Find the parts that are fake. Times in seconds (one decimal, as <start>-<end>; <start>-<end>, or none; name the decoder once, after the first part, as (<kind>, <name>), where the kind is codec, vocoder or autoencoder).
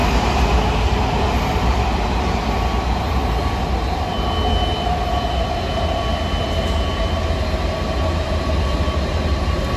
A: none